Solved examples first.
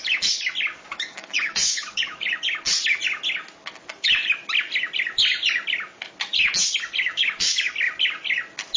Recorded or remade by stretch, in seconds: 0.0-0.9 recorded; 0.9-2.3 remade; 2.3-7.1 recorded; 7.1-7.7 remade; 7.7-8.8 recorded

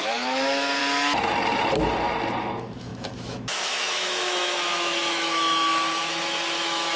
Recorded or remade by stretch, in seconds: 0.0-0.8 remade; 0.8-2.4 recorded; 2.4-7.0 remade

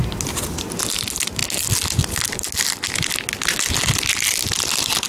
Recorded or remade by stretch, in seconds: 0.0-5.1 recorded